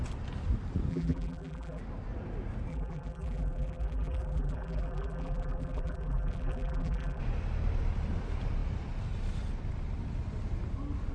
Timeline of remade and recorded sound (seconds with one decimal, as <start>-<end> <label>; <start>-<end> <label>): 0.0-0.9 recorded; 0.9-1.8 remade; 1.8-2.7 recorded; 2.7-7.2 remade; 7.2-11.1 recorded